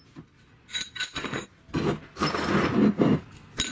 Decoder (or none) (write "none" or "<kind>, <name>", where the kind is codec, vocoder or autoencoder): none